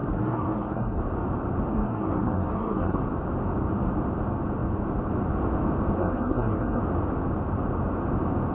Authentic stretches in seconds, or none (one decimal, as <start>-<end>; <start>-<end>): 1.0-1.7; 3.0-6.0; 6.8-8.5